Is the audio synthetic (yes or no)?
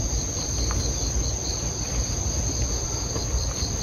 no